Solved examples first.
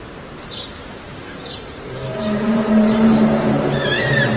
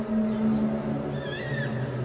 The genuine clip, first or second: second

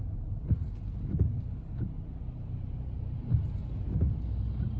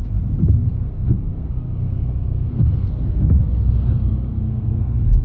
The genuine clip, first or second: first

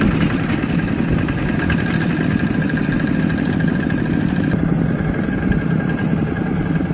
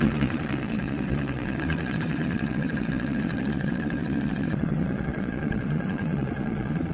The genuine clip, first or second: first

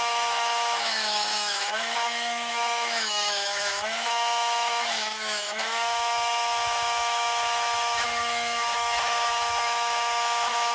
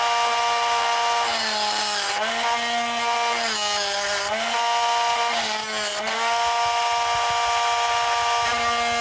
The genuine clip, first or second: second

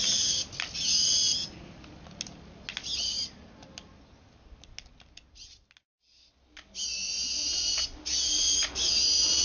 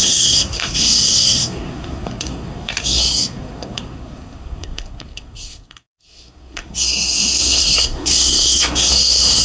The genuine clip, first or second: first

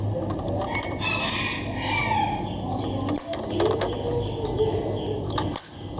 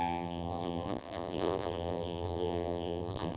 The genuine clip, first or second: first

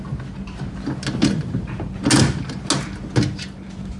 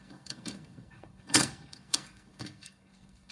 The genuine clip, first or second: first